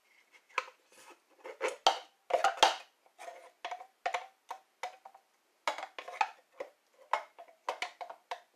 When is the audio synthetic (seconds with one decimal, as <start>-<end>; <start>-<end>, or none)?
none